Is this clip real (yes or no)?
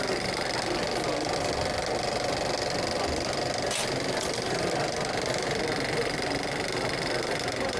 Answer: yes